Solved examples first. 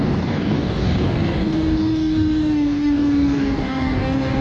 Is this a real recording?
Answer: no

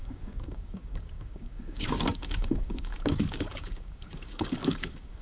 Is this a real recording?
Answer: no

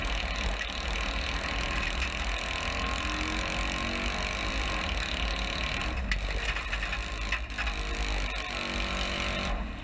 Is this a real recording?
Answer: yes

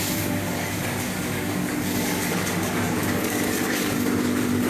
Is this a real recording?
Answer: no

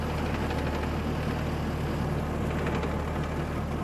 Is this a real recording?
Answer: yes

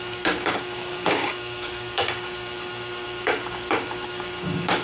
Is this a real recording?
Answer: no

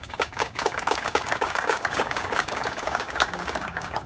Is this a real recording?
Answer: no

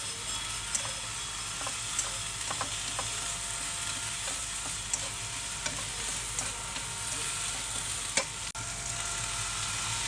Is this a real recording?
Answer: yes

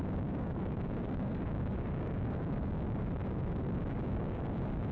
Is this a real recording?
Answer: no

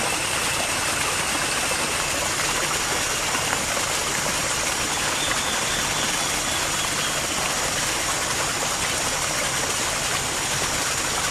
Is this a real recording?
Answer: yes